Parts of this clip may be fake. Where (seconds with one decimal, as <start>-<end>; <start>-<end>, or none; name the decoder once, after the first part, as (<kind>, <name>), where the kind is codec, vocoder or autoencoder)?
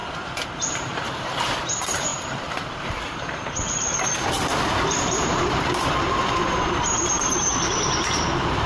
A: 0.0-8.7 (vocoder, BigVGAN v2)